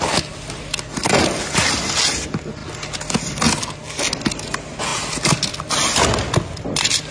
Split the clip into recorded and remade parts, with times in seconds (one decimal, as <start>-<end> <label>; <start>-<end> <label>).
0.0-7.1 recorded